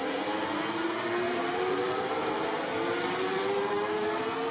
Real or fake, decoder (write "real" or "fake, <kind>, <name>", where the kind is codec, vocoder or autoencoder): real